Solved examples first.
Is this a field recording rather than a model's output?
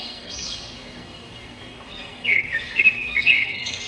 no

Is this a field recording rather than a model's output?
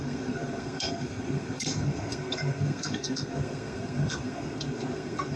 no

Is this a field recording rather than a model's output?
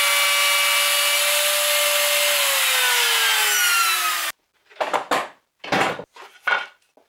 yes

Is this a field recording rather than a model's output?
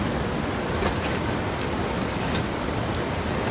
yes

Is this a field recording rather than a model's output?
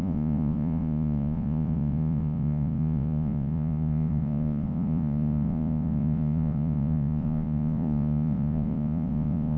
no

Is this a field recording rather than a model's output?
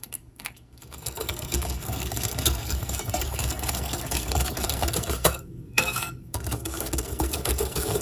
no